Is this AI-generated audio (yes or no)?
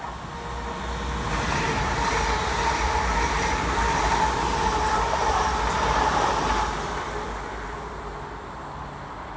no